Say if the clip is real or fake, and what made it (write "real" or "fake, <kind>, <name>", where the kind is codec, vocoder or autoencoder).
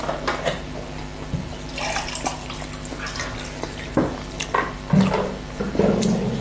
real